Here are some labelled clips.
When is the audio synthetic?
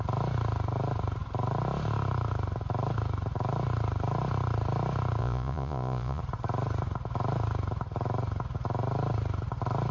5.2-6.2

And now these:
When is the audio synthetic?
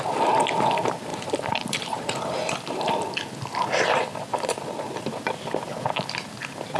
1.1-2.4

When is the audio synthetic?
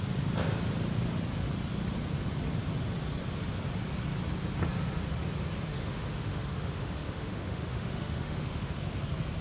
5.7-8.7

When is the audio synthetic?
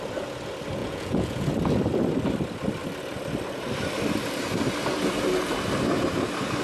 0.8-1.5